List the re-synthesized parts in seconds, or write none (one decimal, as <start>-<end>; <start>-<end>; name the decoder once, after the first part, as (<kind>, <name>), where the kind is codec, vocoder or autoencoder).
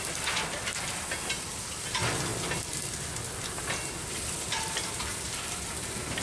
4.8-5.7 (vocoder, BigVGAN v2)